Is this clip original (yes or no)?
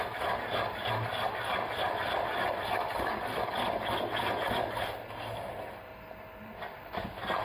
yes